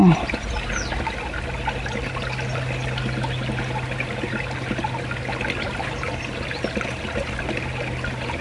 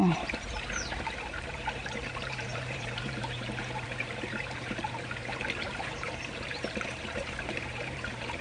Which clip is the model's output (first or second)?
second